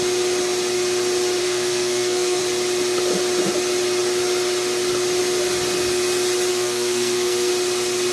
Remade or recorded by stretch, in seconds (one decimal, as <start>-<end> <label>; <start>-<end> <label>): 0.0-1.4 recorded; 1.4-2.4 remade; 2.4-6.5 recorded; 6.5-7.5 remade; 7.5-8.1 recorded